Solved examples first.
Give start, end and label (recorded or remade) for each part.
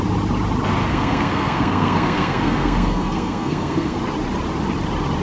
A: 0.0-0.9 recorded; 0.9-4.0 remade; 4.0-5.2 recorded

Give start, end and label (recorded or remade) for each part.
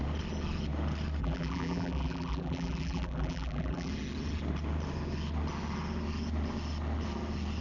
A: 0.0-1.2 recorded; 1.2-3.9 remade; 3.9-7.6 recorded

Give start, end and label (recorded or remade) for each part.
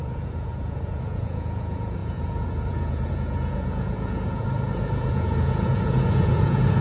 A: 0.0-6.8 remade